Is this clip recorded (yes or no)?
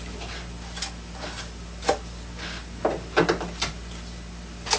yes